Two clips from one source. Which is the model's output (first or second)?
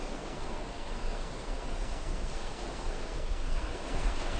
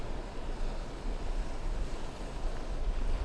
first